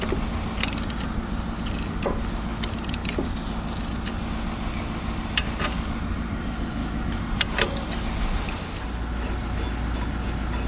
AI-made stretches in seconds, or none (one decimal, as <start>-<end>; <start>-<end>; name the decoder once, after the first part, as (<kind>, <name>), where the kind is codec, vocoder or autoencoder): none